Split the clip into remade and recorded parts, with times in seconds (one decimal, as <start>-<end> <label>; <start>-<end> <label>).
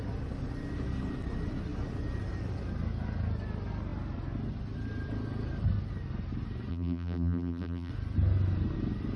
0.0-6.7 recorded; 6.7-7.9 remade; 7.9-9.2 recorded